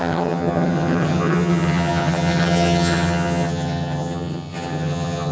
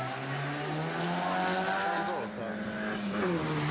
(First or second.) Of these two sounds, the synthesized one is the first